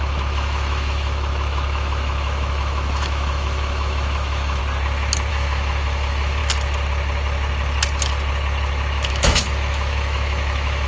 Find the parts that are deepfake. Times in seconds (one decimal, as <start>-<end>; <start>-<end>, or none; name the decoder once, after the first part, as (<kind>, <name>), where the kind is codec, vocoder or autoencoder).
0.0-4.6 (autoencoder, DAC-VAE); 5.3-6.4; 9.1-10.9